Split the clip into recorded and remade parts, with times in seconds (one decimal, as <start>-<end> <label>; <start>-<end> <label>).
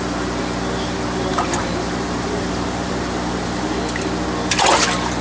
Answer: 0.0-1.3 recorded; 1.3-3.8 remade; 3.8-5.2 recorded